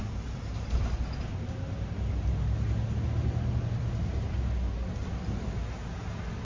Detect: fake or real real